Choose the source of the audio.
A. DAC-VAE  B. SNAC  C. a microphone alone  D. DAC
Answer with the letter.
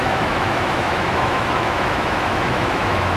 A